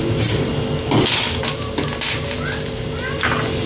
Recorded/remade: recorded